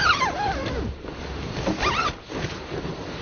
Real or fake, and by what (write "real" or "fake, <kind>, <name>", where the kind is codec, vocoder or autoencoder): real